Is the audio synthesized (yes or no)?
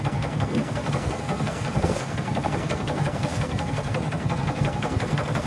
yes